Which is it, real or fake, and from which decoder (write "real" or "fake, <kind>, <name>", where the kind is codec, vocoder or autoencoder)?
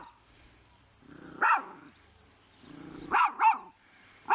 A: real